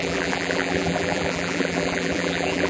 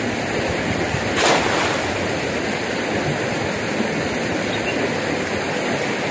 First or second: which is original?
second